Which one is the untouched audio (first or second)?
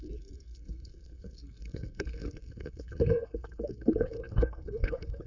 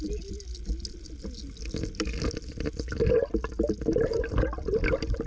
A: second